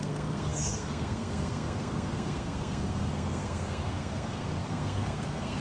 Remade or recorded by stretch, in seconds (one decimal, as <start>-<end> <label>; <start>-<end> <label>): 0.0-5.6 remade

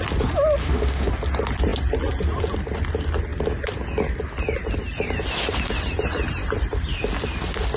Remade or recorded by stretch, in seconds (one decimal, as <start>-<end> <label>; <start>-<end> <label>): 0.0-0.6 recorded; 0.6-1.1 remade; 1.1-7.8 recorded

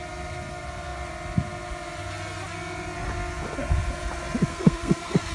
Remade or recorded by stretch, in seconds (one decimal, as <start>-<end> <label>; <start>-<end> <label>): 0.0-4.5 recorded; 4.5-5.3 remade